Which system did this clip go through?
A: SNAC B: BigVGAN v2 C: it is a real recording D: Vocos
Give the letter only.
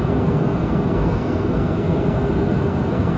A